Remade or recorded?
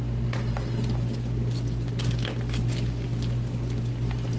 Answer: recorded